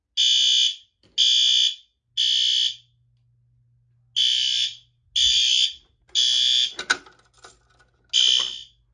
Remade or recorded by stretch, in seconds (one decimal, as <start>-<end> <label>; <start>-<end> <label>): 0.0-8.9 recorded